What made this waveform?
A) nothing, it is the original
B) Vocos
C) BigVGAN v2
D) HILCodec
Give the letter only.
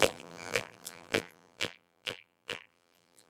C